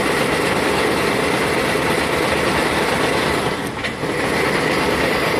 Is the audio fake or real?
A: real